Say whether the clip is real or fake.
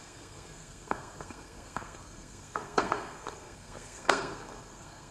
fake